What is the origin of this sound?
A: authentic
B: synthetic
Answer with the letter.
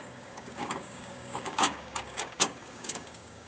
B